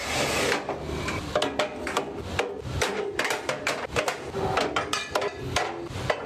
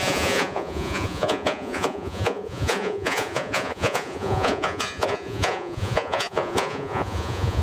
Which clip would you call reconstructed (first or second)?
second